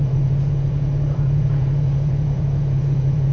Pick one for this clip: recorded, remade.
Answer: remade